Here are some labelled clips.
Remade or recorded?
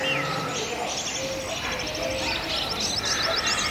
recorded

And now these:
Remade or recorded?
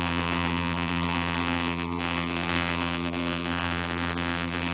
remade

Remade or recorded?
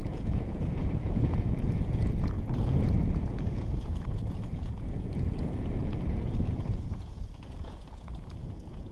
remade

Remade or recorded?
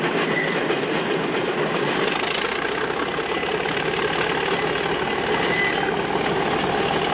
recorded